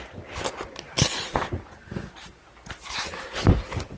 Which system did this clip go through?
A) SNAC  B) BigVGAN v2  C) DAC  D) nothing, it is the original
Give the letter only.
D